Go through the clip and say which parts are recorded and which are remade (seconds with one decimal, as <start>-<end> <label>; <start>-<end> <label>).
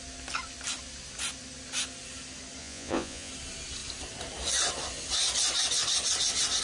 0.0-2.6 recorded; 2.6-3.3 remade; 3.3-6.6 recorded